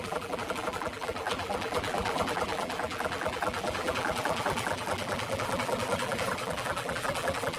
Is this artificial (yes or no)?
yes